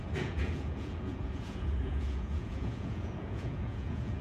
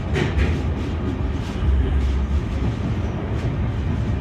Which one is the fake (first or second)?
first